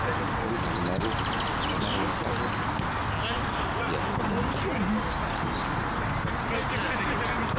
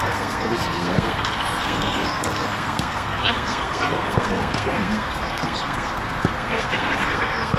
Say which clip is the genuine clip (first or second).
first